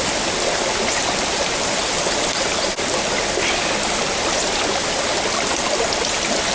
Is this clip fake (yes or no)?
no